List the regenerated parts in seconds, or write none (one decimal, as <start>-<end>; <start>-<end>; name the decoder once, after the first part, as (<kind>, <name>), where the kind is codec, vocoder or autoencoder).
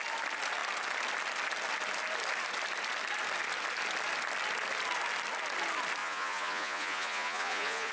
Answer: 6.0-7.9 (vocoder, Vocos)